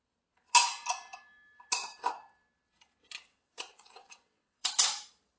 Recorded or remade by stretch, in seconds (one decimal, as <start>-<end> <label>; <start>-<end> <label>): 0.0-3.3 recorded; 3.3-4.7 remade; 4.7-5.4 recorded